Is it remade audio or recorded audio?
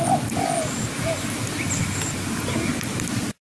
recorded